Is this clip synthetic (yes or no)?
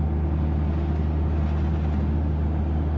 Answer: no